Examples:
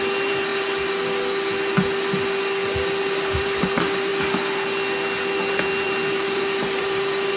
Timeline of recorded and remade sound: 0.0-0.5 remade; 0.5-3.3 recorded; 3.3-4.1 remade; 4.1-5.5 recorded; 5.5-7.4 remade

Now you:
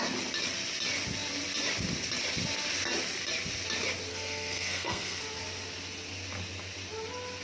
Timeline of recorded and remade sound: 0.0-4.1 recorded; 4.1-5.2 remade; 5.2-7.4 recorded

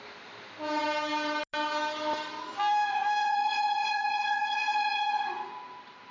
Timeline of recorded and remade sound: 0.0-3.2 recorded; 3.2-5.5 remade; 5.5-6.1 recorded

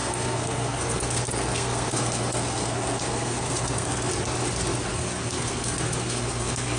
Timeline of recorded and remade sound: 0.0-4.1 remade; 4.1-4.9 recorded; 4.9-6.8 remade

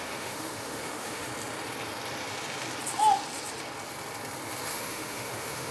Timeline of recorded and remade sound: 0.0-1.3 remade; 1.3-4.7 recorded; 4.7-5.7 remade